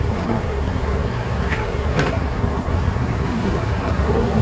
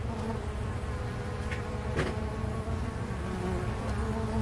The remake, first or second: first